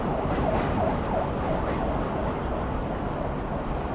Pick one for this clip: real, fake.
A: real